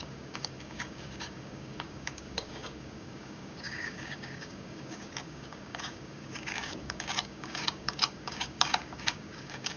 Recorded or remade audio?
remade